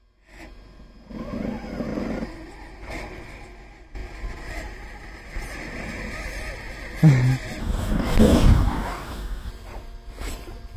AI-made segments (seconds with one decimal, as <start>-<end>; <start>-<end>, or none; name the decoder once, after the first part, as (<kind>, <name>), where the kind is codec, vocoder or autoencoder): 7.6-9.5 (codec, DAC)